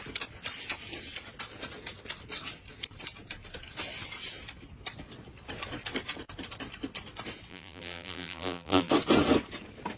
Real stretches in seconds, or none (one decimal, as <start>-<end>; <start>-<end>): 0.0-7.5; 8.9-10.0